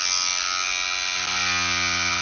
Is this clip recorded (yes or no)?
yes